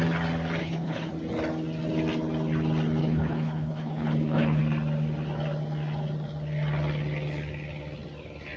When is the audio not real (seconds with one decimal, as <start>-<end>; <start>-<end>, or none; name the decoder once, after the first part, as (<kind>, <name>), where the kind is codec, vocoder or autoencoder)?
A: 0.6-1.1 (codec, HILCodec); 3.0-4.6

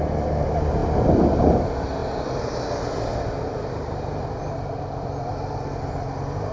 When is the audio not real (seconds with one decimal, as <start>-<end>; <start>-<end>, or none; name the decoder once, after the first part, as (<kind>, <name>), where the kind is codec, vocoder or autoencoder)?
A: none